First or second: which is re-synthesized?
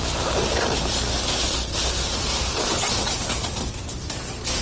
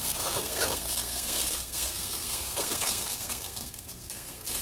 second